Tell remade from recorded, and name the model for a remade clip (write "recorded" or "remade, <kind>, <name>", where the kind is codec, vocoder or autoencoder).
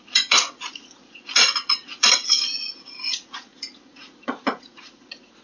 remade, vocoder, Vocos